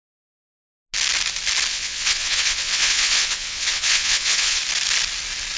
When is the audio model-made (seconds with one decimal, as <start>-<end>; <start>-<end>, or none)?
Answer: 1.7-4.6